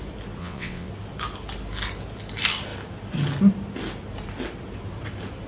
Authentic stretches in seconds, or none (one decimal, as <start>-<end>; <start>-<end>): 0.0-0.4; 0.9-5.5